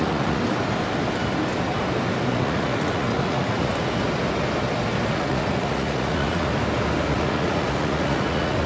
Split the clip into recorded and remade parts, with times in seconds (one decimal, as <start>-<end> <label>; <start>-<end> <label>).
0.0-0.4 remade; 0.4-2.3 recorded; 2.3-3.8 remade; 3.8-5.1 recorded; 5.1-6.5 remade; 6.5-7.0 recorded; 7.0-8.7 remade